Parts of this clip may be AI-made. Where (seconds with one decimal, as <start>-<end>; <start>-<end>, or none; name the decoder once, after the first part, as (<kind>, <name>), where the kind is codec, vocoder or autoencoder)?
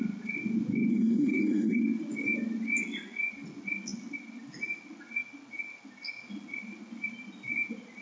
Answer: 0.9-1.8 (codec, SNAC)